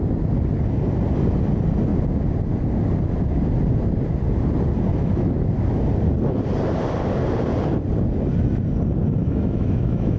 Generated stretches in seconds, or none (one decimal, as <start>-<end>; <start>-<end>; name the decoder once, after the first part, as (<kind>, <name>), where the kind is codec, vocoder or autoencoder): 4.9-5.5 (autoencoder, DAC-VAE); 9.2-10.2